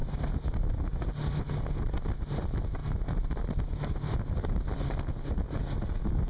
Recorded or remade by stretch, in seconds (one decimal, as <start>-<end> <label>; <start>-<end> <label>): 0.0-6.3 recorded